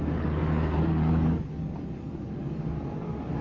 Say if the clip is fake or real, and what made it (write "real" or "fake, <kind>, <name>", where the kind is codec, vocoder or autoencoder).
fake, codec, DAC